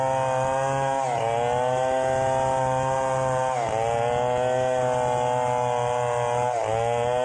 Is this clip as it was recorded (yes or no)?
yes